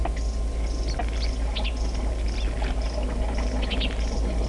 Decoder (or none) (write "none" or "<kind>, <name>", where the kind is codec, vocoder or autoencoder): none